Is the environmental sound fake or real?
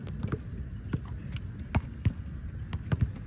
real